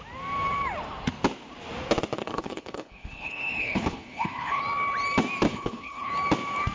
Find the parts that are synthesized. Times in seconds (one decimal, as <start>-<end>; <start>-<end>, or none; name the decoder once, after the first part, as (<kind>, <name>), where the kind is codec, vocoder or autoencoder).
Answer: 2.2-4.6 (codec, HILCodec); 5.5-6.1